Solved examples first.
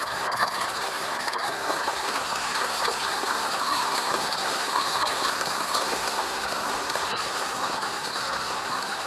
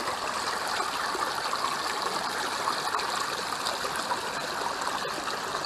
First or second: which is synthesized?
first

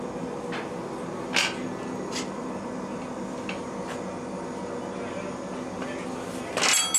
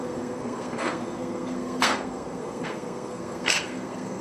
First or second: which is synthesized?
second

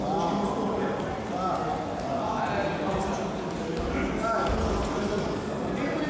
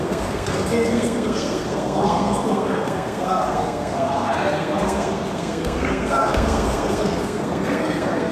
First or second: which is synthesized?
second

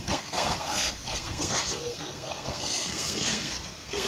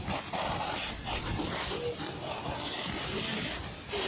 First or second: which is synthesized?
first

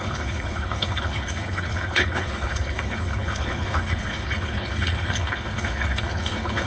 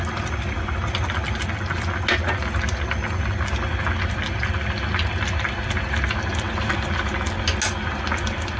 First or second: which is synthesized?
first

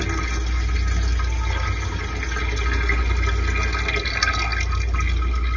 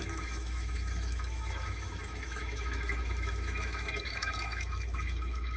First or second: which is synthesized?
second